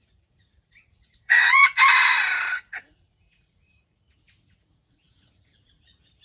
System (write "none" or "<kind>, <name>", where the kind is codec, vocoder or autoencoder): vocoder, Vocos